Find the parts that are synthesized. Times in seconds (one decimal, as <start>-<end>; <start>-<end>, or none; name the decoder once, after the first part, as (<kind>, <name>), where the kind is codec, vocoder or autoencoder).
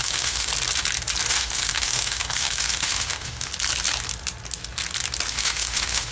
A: 0.0-0.5 (autoencoder, DAC-VAE); 1.3-3.5; 5.3-6.1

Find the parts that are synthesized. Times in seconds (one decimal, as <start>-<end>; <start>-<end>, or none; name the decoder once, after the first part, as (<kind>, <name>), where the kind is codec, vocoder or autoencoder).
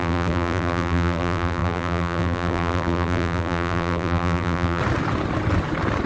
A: 0.0-4.8 (vocoder, BigVGAN v2)